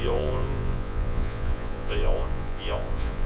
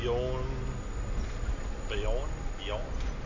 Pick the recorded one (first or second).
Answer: second